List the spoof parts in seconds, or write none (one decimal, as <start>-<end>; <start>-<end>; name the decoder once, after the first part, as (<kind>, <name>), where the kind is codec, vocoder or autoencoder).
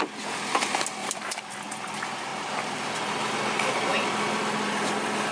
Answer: 1.0-1.9 (vocoder, BigVGAN v2); 2.3-3.3; 3.9-4.7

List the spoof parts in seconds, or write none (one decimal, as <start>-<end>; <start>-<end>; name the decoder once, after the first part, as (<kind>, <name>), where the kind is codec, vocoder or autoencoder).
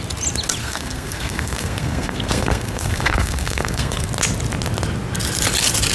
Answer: 0.6-4.1 (codec, SNAC)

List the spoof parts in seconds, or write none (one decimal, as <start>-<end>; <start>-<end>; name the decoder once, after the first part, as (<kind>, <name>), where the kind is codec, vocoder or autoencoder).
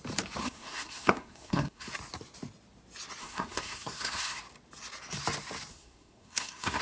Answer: 0.4-1.9 (codec, SNAC); 3.2-4.4; 5.7-6.8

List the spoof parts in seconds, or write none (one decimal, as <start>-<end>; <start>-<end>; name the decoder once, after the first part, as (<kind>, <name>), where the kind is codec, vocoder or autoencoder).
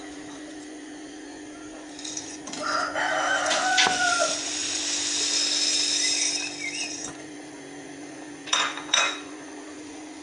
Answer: 0.0-4.8 (vocoder, Vocos); 6.8-10.2